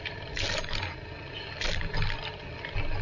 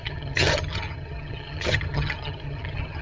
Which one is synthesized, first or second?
second